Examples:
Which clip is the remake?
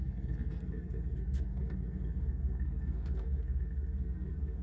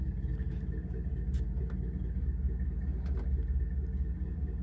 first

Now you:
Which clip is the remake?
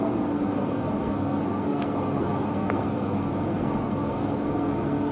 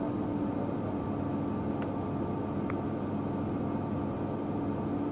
first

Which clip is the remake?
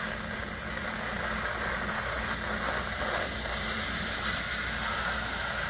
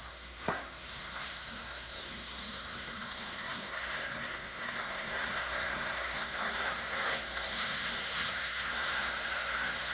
second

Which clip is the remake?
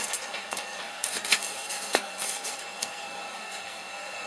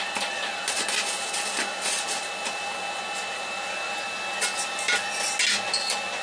first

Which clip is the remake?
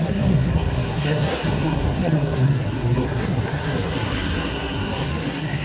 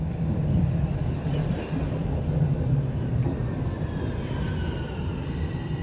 first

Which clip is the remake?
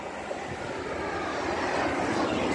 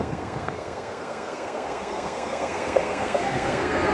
second